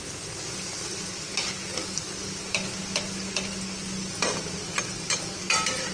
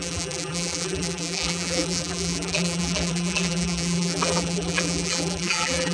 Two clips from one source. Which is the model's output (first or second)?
second